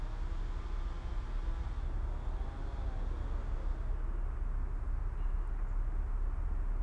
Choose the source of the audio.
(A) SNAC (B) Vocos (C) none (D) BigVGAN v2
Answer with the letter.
C